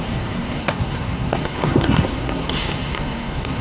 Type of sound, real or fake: fake